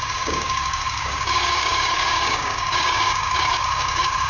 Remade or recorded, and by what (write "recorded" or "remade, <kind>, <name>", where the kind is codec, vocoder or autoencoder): remade, codec, DAC